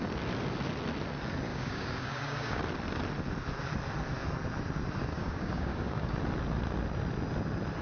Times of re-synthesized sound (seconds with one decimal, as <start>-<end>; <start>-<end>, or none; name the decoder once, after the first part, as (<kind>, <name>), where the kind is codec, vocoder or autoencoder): 1.5-2.6 (codec, DAC); 5.1-6.1